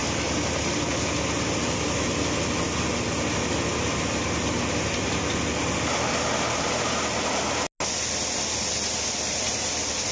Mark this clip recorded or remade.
recorded